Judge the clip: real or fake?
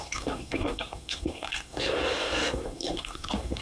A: fake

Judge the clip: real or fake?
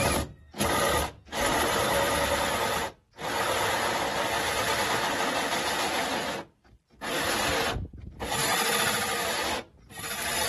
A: real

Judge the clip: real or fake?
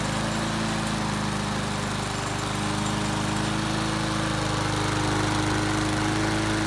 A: real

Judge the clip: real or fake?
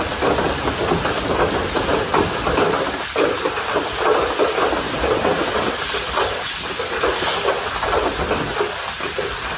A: real